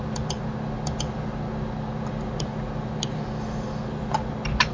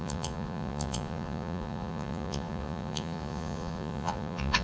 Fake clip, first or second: second